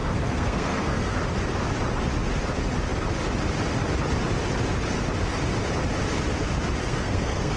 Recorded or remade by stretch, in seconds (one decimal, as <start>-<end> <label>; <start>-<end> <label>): 0.0-1.2 remade; 1.2-6.8 recorded; 6.8-7.6 remade